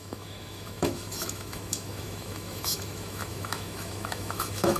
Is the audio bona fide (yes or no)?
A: no